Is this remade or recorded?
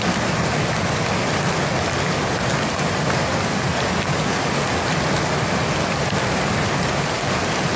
recorded